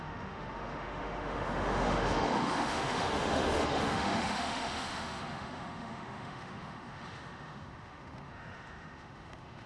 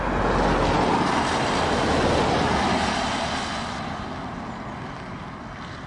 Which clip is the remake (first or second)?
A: first